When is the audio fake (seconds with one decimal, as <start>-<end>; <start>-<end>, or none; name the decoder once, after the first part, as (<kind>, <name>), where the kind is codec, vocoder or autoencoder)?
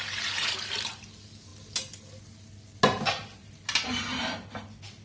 none